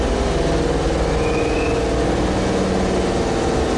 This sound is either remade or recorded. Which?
recorded